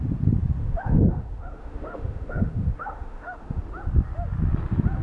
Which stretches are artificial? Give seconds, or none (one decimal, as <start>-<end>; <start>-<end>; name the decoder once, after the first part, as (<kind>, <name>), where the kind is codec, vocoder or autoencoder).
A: 0.6-3.6 (autoencoder, DAC-VAE)